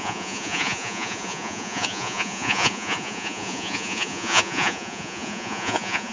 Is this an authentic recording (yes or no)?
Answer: no